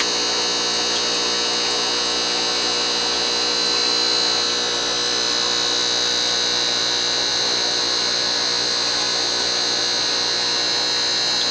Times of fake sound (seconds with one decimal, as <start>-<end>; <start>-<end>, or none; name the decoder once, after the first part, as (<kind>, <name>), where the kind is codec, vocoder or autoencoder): 7.3-9.8 (vocoder, BigVGAN v2)